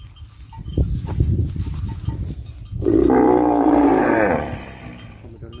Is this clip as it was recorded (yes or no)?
yes